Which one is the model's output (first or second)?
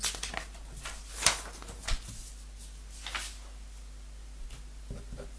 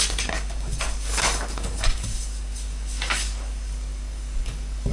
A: second